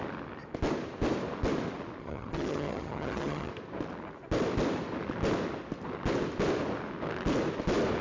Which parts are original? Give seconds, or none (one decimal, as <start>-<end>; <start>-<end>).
0.0-2.0; 3.5-8.0